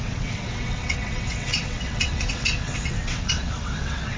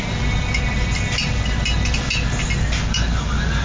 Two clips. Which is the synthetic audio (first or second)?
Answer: first